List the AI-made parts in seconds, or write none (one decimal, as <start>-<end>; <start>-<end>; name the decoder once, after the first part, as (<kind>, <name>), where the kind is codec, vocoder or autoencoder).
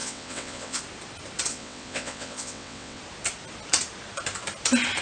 0.0-0.8 (vocoder, WaveNeXt); 1.5-3.0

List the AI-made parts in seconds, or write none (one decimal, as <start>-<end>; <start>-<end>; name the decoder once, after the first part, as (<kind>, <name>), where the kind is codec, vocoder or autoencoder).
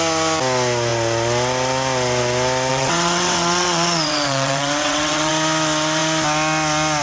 2.7-5.3 (vocoder, WaveNeXt)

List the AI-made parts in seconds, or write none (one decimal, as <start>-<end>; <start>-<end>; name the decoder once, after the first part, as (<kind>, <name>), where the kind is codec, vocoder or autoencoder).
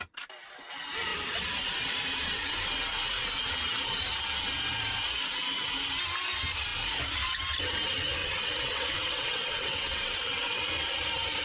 8.2-10.6 (vocoder, WaveNeXt)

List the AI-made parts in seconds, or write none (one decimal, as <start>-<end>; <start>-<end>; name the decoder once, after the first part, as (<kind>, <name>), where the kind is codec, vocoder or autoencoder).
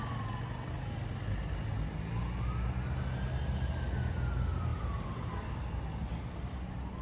none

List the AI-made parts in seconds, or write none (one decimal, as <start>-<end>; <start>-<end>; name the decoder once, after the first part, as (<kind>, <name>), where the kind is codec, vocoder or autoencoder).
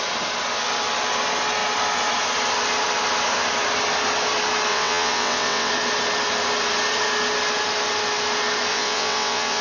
4.7-5.7 (vocoder, WaveNeXt); 8.7-9.6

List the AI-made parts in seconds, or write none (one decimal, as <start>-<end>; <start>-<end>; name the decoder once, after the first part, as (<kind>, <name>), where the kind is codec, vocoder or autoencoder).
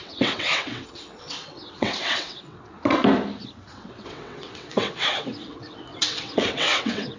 0.0-2.7 (vocoder, WaveNeXt); 3.6-7.2